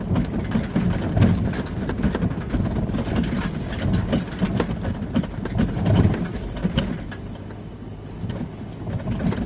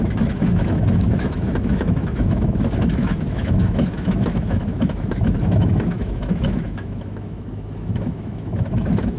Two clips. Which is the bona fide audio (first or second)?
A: first